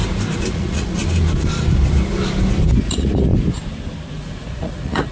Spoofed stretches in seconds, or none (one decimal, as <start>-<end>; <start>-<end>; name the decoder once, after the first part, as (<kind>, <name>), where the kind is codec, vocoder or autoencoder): 0.5-1.0 (vocoder, Vocos); 2.8-3.3; 4.1-5.1